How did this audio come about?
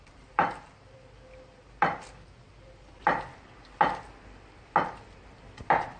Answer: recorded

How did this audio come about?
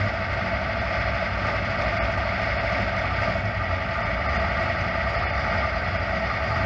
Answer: recorded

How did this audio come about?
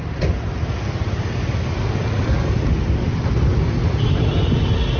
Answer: recorded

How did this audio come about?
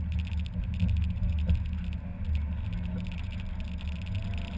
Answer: recorded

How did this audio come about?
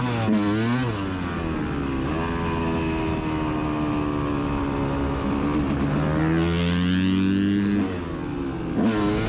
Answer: recorded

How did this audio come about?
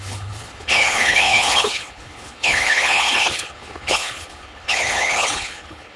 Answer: remade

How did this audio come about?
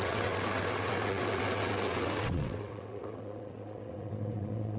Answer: remade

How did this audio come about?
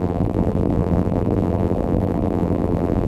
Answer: remade